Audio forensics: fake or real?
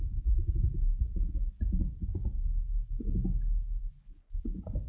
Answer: real